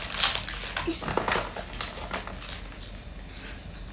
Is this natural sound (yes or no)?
yes